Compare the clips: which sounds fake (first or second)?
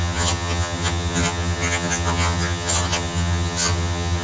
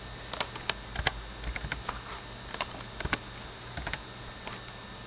first